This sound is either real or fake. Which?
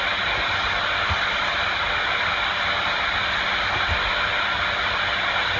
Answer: real